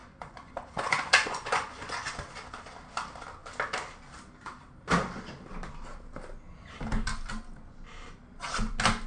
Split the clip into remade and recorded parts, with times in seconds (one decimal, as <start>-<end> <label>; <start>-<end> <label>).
0.0-2.1 remade; 2.1-9.1 recorded